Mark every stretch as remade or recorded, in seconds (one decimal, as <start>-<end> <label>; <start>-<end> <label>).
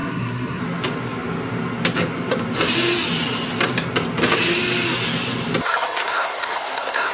0.0-0.6 remade; 0.6-6.0 recorded; 6.0-7.1 remade